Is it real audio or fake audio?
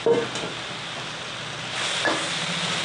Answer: real